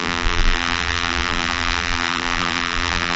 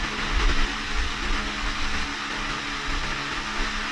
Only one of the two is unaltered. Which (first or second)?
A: second